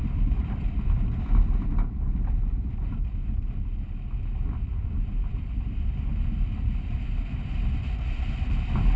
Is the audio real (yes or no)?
yes